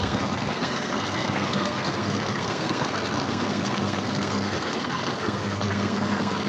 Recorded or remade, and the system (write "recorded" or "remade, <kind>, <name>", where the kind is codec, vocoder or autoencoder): remade, codec, SNAC